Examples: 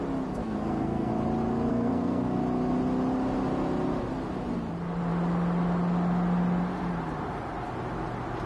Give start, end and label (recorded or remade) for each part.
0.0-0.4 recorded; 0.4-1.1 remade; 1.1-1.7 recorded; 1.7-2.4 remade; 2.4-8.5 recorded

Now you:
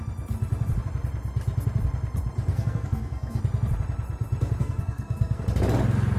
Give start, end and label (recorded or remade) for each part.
0.0-2.5 recorded; 2.5-3.4 remade; 3.4-4.6 recorded; 4.6-5.4 remade; 5.4-6.2 recorded

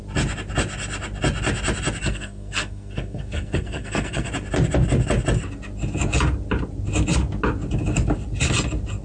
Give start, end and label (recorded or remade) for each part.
0.0-2.0 recorded; 2.0-4.3 remade; 4.3-9.0 recorded

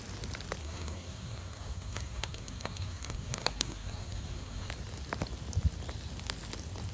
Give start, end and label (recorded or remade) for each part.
0.0-0.6 recorded; 0.6-4.7 remade; 4.7-6.9 recorded

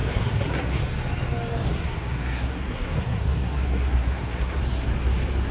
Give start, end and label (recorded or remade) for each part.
0.0-0.8 remade; 0.8-1.7 recorded; 1.7-4.6 remade; 4.6-5.5 recorded

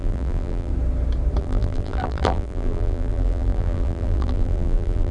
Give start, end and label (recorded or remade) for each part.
0.0-0.7 remade; 0.7-1.4 recorded; 1.4-5.1 remade

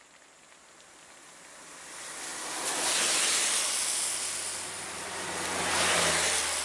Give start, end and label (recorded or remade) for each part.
0.0-6.6 recorded